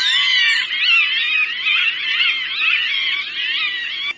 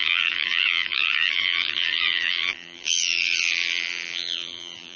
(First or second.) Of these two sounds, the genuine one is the first